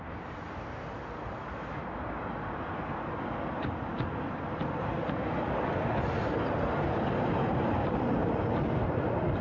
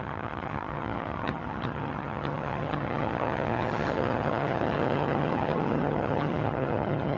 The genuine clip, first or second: first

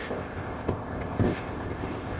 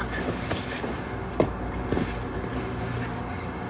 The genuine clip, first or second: second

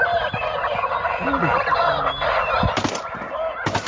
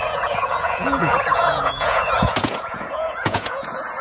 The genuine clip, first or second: first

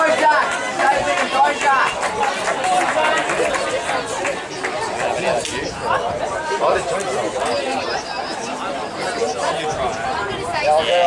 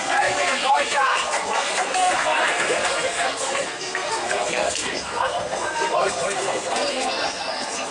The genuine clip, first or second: first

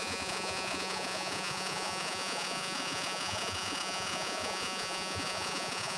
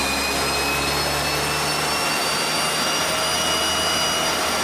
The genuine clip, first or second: second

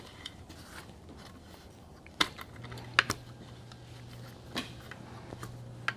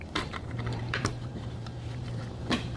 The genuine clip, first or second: first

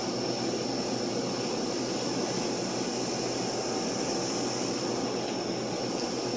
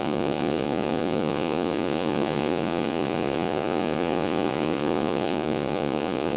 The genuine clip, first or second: first